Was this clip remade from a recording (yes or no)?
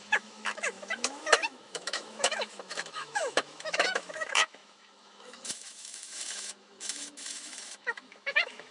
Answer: yes